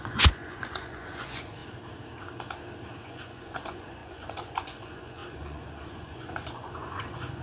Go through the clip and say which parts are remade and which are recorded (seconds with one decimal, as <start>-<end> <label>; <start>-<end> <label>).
0.0-1.6 remade; 1.6-3.0 recorded; 3.0-7.4 remade